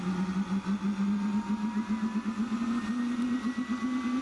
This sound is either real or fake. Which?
real